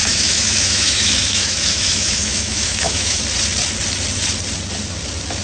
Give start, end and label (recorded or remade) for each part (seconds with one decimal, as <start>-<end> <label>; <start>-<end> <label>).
0.0-3.2 remade; 3.2-5.4 recorded